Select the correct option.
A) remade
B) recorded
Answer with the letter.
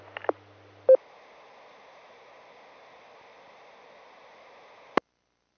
B